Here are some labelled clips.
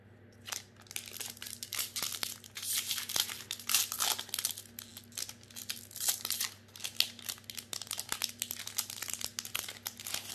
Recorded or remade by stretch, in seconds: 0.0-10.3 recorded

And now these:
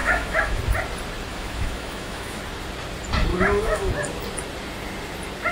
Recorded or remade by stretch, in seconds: 0.0-0.6 remade; 0.6-1.3 recorded; 1.3-2.4 remade; 2.4-3.3 recorded; 3.3-3.9 remade; 3.9-5.5 recorded

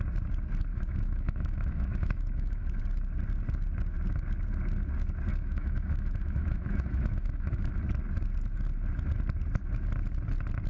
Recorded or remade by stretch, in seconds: 0.0-0.7 recorded; 0.7-2.8 remade; 2.8-5.3 recorded; 5.3-7.8 remade; 7.8-10.7 recorded